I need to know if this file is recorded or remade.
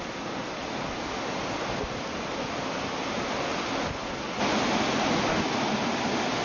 recorded